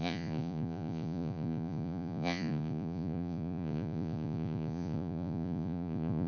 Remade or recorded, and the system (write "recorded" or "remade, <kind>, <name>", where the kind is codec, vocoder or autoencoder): remade, vocoder, Vocos